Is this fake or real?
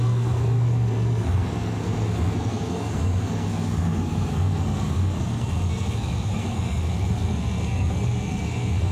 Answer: fake